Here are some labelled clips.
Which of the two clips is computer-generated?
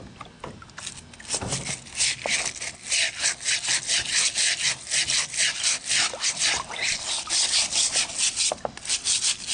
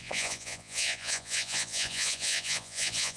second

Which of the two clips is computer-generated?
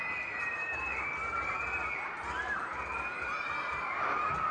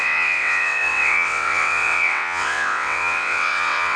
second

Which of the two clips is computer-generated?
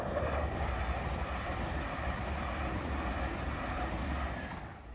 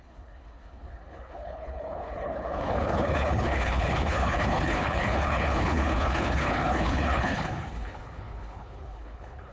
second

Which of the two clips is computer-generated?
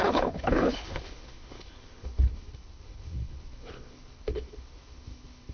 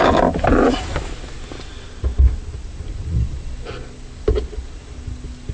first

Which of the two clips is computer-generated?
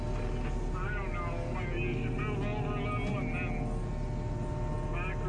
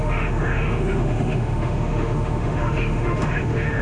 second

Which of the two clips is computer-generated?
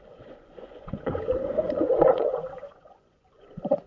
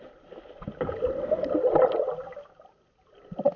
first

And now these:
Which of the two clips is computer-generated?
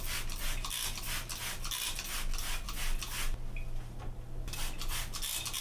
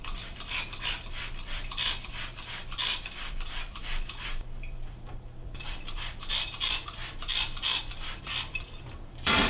second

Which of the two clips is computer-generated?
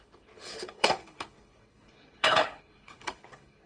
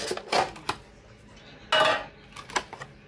first